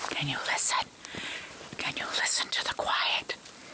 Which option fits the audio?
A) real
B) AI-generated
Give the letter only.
A